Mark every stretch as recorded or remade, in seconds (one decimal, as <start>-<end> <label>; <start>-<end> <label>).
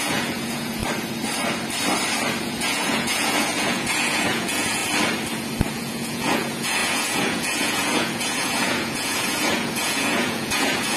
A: 0.0-0.8 remade; 0.8-2.4 recorded; 2.4-4.8 remade; 4.8-5.7 recorded; 5.7-11.0 remade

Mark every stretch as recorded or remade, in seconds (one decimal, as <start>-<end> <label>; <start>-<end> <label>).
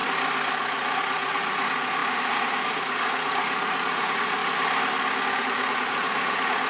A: 0.0-0.6 recorded; 0.6-4.4 remade; 4.4-5.4 recorded; 5.4-6.7 remade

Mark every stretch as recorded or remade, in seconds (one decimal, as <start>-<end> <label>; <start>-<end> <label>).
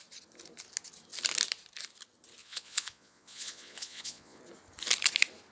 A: 0.0-2.4 recorded; 2.4-4.4 remade; 4.4-5.5 recorded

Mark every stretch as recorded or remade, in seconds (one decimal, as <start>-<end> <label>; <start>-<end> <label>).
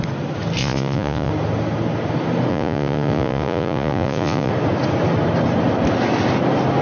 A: 0.0-0.6 recorded; 0.6-1.3 remade; 1.3-2.5 recorded; 2.5-4.5 remade; 4.5-6.8 recorded